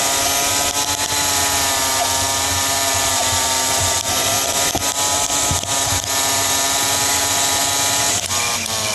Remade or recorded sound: recorded